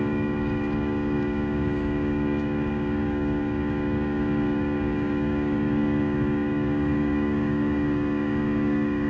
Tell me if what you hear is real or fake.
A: fake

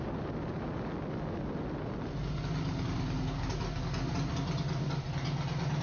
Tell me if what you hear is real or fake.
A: real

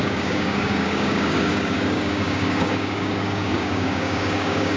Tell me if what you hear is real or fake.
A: fake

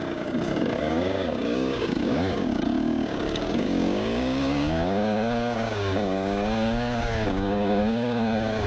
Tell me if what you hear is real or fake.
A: fake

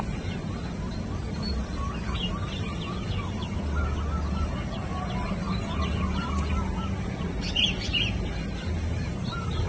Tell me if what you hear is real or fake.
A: real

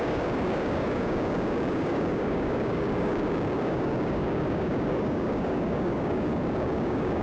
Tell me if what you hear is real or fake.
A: fake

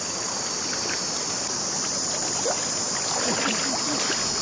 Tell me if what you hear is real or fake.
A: real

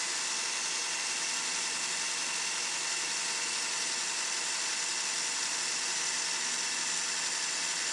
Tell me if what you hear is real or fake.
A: real